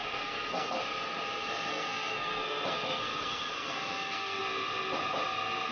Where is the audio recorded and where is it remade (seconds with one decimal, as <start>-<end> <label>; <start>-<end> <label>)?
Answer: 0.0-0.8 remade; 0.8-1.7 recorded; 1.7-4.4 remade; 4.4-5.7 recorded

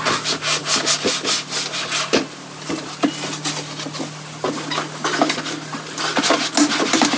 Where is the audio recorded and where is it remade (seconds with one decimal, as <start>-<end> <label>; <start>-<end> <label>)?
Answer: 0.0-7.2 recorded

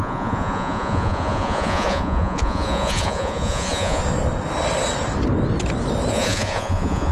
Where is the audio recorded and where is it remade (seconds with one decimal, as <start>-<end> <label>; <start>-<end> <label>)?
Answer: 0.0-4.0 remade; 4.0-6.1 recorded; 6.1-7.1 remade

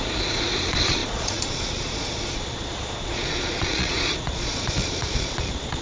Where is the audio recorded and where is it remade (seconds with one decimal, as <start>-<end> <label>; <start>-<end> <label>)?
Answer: 0.0-5.8 remade